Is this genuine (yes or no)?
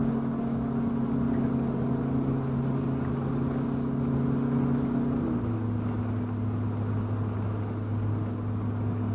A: yes